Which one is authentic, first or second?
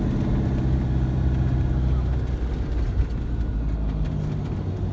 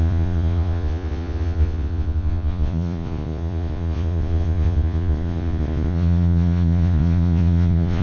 first